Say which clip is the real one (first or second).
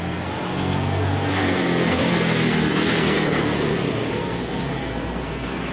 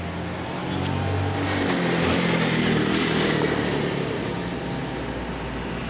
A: second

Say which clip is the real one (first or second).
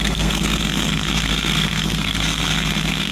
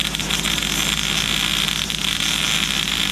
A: second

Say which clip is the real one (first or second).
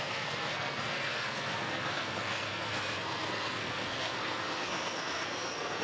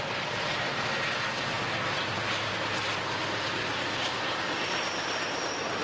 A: second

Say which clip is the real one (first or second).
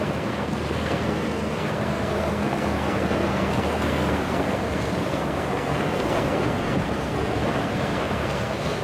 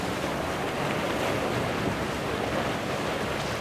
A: second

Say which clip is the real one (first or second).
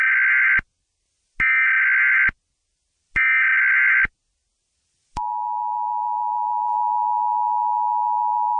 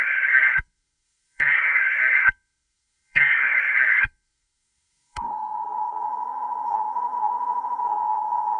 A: first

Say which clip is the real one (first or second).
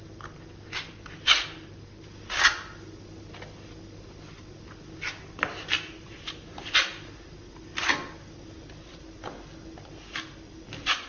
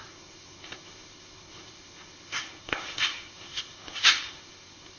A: first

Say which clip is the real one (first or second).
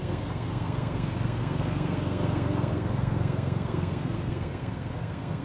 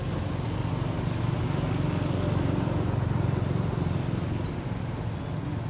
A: second